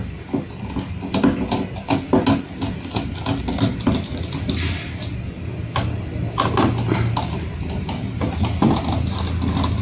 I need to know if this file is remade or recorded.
recorded